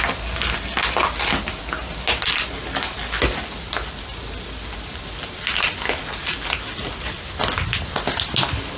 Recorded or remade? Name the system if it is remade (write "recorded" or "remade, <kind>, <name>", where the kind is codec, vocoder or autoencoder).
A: recorded